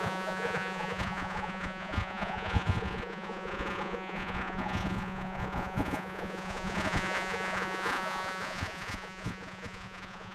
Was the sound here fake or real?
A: fake